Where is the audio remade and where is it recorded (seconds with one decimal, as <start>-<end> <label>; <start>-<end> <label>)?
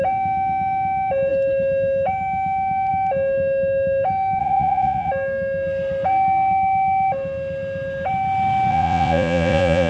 0.0-4.4 recorded; 4.4-5.1 remade; 5.1-8.7 recorded; 8.7-9.9 remade